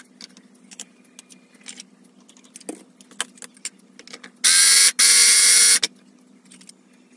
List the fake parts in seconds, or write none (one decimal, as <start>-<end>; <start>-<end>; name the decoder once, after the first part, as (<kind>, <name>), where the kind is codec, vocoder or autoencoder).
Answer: none